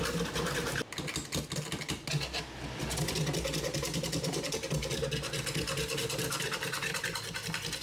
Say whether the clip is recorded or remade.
recorded